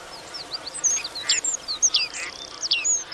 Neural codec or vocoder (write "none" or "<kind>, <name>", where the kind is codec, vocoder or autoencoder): none